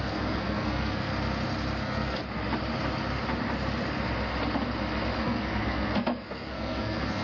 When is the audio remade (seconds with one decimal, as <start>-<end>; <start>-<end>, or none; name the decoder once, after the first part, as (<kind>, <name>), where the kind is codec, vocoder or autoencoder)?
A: 0.0-1.1 (codec, SNAC); 1.8-2.2; 5.2-7.2